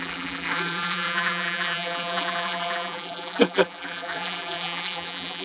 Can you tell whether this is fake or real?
fake